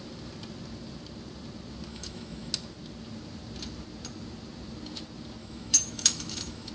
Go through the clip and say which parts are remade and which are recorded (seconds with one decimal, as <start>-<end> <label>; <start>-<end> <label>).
0.0-1.9 recorded; 1.9-2.5 remade; 2.5-5.4 recorded; 5.4-6.7 remade